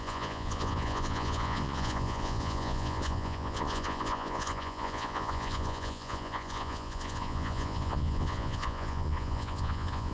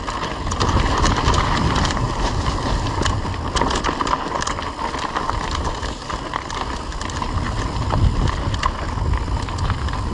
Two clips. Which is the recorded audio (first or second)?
second